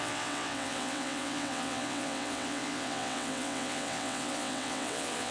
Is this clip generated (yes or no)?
yes